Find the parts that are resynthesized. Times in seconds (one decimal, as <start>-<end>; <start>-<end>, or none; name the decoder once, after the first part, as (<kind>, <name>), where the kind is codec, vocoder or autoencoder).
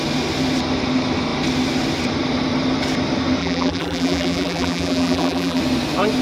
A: 3.4-5.6 (vocoder, BigVGAN v2)